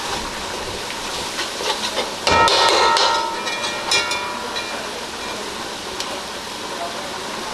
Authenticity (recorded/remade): recorded